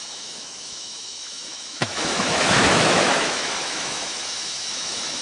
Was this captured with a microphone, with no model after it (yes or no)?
no